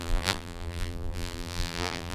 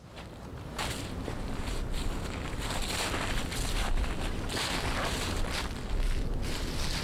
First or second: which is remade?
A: first